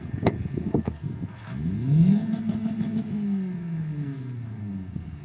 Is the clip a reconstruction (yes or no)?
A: yes